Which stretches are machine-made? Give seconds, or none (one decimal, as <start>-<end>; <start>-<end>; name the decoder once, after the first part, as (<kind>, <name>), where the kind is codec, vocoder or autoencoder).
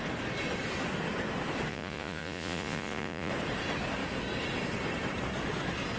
1.7-3.3 (vocoder, Vocos)